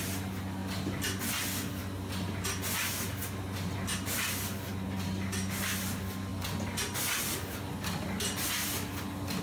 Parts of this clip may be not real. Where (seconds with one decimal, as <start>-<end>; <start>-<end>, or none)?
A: none